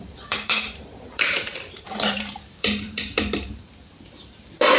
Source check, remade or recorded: remade